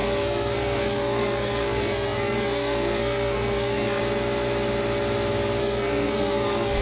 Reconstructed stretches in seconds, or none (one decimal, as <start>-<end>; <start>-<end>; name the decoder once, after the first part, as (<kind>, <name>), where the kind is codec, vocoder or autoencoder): 0.0-4.0 (codec, SNAC); 5.6-6.8